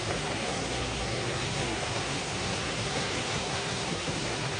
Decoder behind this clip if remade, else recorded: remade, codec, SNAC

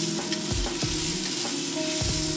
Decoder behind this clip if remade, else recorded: recorded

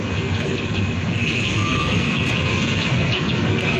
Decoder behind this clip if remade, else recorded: remade, codec, SNAC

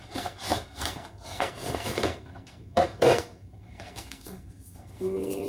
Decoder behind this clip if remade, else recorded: remade, codec, SNAC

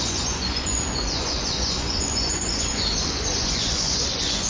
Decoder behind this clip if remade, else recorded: remade, vocoder, Vocos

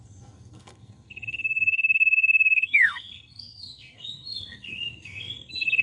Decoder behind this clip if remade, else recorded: remade, codec, SNAC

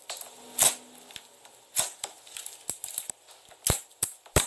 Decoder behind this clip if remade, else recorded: recorded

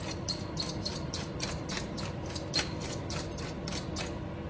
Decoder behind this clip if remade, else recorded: recorded